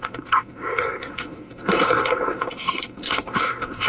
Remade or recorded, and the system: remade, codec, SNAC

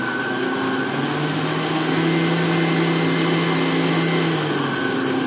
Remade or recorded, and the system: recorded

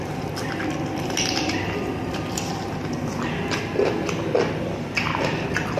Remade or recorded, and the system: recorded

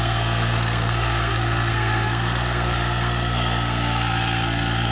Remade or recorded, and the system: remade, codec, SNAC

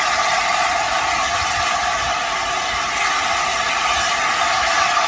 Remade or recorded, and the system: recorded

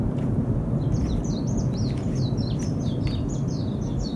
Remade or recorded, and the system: recorded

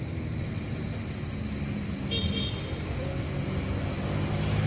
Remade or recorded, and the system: recorded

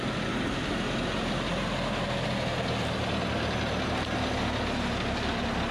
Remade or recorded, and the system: recorded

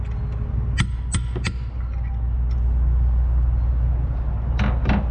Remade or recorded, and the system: recorded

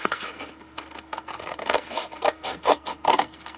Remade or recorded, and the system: remade, codec, SNAC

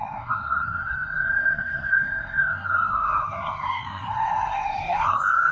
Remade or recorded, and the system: remade, codec, SNAC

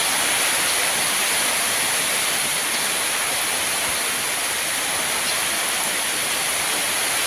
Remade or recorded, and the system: recorded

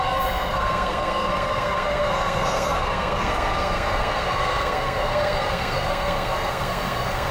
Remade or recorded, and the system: remade, codec, SNAC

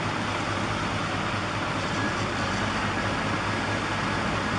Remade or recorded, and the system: recorded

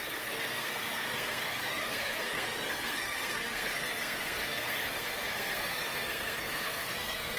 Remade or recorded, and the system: remade, codec, SNAC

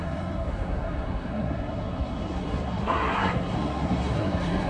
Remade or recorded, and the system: remade, codec, SNAC